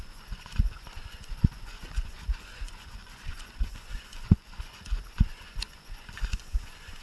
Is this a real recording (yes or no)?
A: no